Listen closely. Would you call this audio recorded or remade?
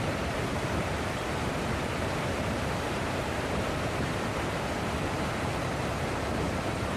remade